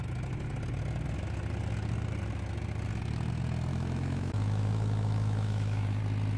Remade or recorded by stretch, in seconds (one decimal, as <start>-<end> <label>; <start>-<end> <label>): 0.0-3.7 recorded; 3.7-6.0 remade; 6.0-6.4 recorded